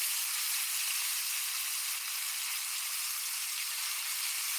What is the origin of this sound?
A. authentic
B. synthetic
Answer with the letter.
A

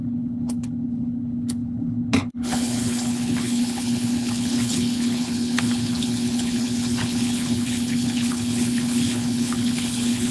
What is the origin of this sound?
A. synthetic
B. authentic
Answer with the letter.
A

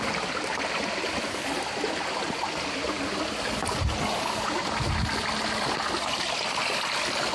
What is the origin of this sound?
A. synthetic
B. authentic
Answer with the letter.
B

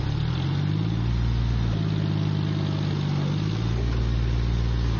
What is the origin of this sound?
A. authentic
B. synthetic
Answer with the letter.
A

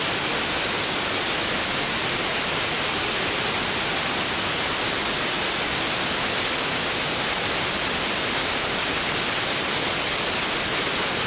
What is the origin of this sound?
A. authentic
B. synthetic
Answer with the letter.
A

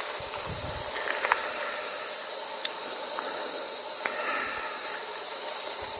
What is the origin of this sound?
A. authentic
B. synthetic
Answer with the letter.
A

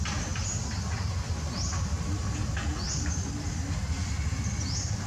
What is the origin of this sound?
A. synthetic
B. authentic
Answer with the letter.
B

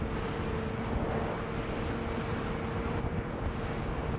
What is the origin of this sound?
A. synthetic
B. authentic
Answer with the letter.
B